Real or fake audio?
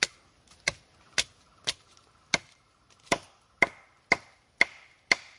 real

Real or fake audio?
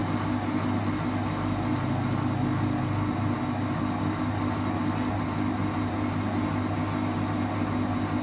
real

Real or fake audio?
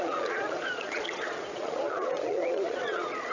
fake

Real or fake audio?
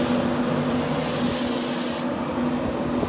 real